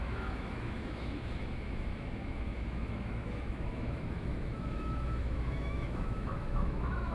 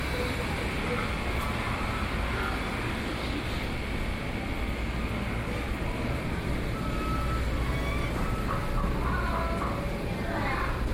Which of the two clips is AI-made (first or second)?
first